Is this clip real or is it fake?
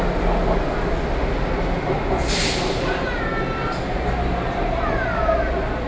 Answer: real